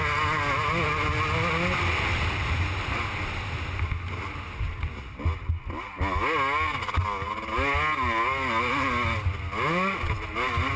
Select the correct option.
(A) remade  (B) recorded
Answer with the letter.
B